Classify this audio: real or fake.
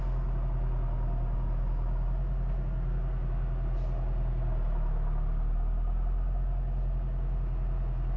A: real